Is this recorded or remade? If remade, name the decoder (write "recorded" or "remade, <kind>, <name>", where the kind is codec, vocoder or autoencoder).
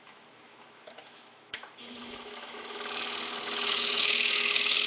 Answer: remade, autoencoder, DAC-VAE